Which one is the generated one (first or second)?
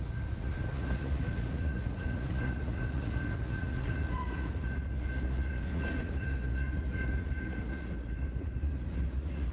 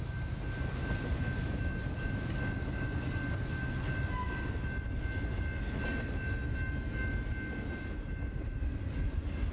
first